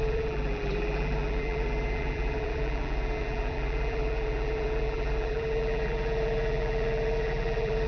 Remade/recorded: remade